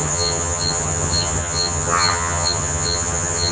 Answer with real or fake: fake